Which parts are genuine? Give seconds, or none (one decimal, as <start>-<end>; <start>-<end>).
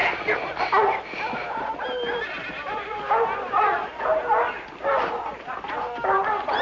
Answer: 0.0-6.6